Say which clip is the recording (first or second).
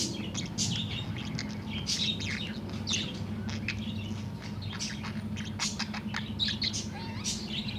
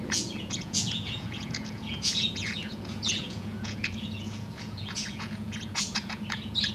first